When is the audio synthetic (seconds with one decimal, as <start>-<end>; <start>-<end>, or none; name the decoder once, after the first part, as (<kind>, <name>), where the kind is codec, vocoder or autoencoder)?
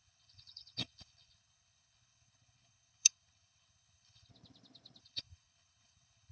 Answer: 0.0-4.3 (codec, HILCodec); 5.0-6.3